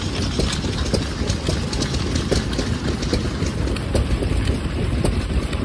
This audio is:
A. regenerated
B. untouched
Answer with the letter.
B